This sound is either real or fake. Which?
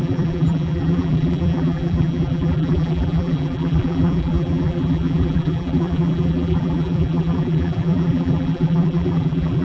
fake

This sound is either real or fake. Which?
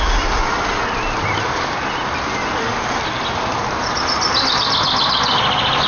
real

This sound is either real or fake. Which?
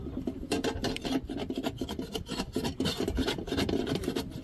fake